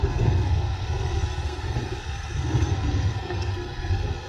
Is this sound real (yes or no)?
no